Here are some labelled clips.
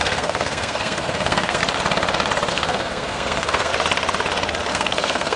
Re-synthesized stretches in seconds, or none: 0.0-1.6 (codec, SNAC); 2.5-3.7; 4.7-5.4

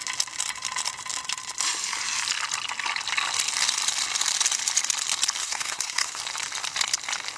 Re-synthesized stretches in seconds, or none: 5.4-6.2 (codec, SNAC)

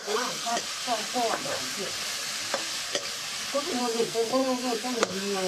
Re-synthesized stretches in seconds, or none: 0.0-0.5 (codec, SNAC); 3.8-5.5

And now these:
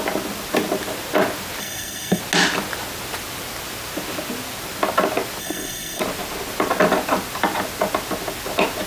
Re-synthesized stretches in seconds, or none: 1.6-2.2 (codec, SNAC); 5.4-6.0

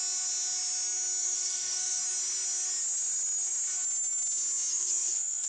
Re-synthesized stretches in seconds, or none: 1.2-2.0 (codec, SNAC); 4.7-5.5

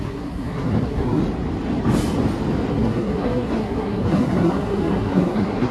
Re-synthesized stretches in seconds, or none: 0.0-1.2 (codec, SNAC); 2.7-5.7

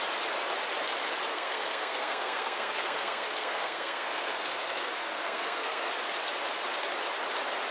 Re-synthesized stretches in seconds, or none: 1.3-5.9 (codec, SNAC)

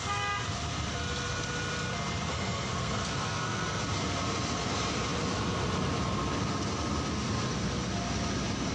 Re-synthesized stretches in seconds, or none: 2.3-3.8 (codec, SNAC)